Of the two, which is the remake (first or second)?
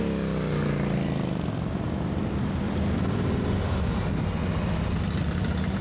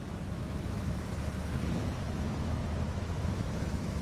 second